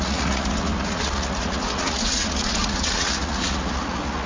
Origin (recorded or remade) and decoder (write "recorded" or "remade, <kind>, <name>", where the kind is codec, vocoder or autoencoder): remade, vocoder, Vocos